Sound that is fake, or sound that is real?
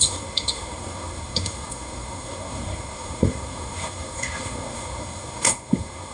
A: fake